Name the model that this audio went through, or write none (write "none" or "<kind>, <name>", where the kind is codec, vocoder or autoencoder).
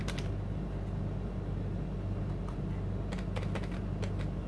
none